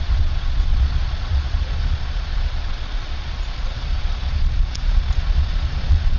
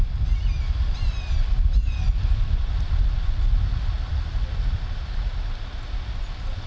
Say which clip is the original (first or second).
second